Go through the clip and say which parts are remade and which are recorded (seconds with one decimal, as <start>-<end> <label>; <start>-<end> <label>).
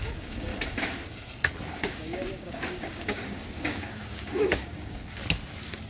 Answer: 0.0-0.5 remade; 0.5-1.8 recorded; 1.8-5.2 remade; 5.2-5.9 recorded